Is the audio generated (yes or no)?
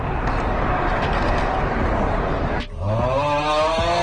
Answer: no